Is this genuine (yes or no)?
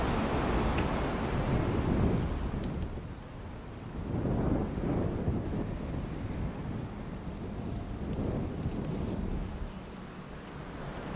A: yes